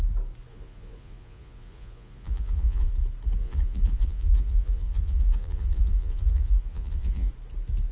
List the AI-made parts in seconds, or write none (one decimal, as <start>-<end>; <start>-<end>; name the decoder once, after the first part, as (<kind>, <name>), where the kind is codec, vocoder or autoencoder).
0.5-2.9 (vocoder, Vocos); 3.4-7.3